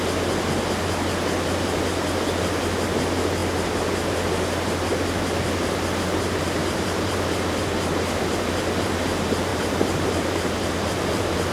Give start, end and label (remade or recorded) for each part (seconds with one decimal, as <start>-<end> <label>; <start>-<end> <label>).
0.0-6.6 recorded; 6.6-8.5 remade; 8.5-9.5 recorded; 9.5-11.5 remade